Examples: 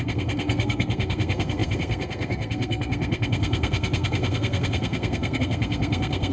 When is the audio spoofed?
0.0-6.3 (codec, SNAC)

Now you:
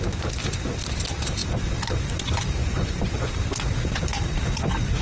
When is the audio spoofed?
2.6-3.3 (vocoder, Vocos)